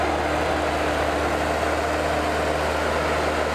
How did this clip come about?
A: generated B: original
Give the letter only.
B